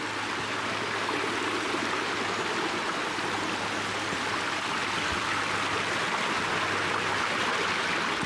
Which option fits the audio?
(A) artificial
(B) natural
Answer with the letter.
B